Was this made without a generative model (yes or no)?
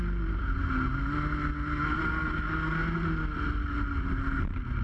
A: yes